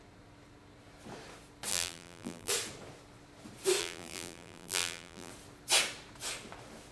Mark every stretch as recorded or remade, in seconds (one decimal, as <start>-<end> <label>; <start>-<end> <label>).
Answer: 0.0-1.7 recorded; 1.7-2.5 remade; 2.5-3.8 recorded; 3.8-5.3 remade; 5.3-6.9 recorded